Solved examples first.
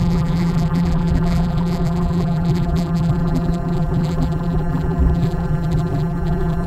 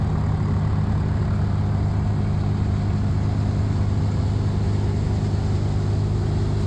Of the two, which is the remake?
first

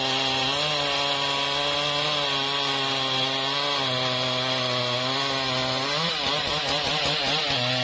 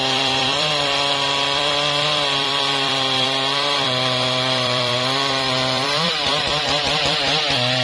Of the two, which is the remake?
second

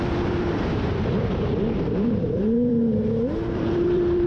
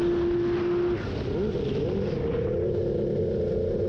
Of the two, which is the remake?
first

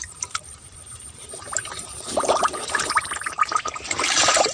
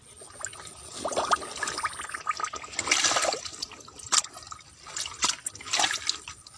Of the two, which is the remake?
first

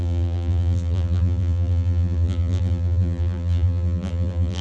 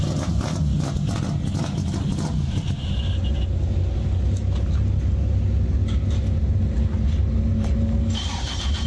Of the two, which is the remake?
first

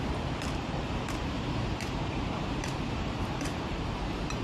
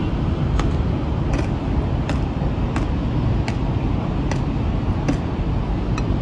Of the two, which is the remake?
first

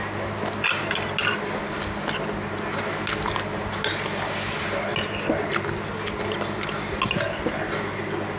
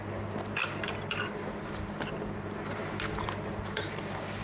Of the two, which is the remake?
second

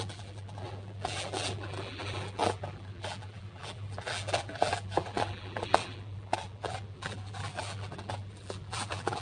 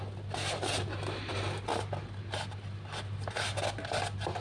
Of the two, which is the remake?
first